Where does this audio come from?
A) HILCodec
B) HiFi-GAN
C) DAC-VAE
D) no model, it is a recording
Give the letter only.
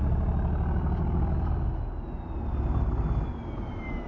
D